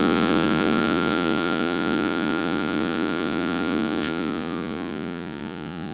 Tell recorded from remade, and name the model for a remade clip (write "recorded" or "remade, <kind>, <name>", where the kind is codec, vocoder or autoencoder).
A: remade, vocoder, Vocos